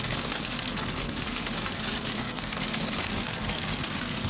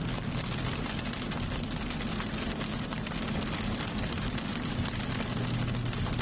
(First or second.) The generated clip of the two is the first